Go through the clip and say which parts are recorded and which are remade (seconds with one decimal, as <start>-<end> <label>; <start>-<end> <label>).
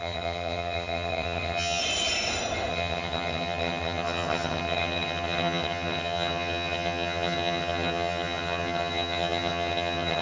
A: 0.0-1.8 remade; 1.8-2.7 recorded; 2.7-10.2 remade